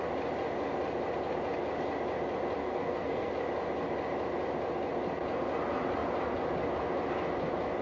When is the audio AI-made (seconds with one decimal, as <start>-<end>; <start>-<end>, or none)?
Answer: 2.6-3.3